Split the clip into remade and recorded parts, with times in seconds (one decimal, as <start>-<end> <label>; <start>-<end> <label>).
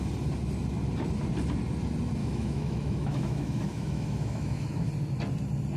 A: 0.0-2.2 recorded; 2.2-4.9 remade; 4.9-5.8 recorded